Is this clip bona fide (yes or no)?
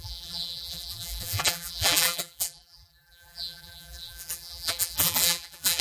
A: no